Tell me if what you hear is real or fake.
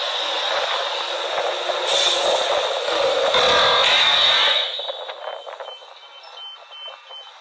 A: real